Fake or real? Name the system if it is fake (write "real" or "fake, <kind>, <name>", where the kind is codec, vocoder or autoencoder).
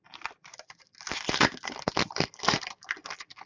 real